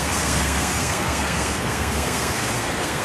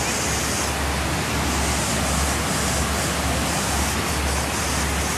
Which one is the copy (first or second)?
first